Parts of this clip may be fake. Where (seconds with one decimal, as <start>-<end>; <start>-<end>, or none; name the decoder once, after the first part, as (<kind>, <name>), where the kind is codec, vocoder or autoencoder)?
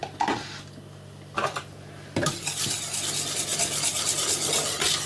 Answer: none